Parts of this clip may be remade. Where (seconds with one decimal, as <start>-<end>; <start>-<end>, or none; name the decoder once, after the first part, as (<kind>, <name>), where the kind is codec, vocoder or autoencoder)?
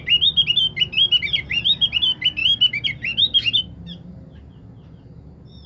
none